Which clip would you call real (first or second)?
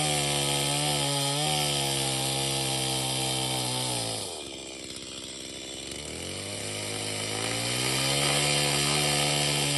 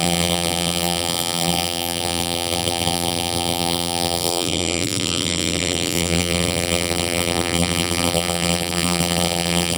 first